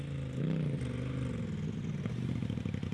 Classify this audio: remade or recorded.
recorded